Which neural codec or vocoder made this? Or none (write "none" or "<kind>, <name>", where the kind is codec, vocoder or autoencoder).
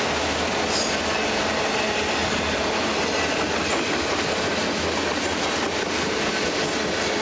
none